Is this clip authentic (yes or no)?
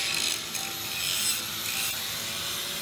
yes